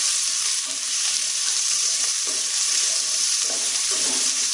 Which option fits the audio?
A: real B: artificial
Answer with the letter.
B